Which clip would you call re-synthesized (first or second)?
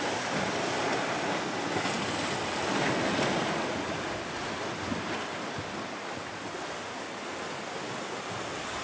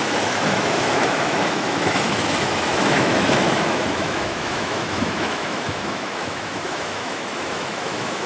second